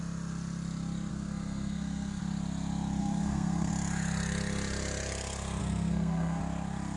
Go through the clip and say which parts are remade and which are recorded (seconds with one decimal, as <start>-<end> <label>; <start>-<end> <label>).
0.0-1.1 recorded; 1.1-2.2 remade; 2.2-3.0 recorded; 3.0-3.7 remade; 3.7-5.6 recorded; 5.6-6.4 remade; 6.4-7.0 recorded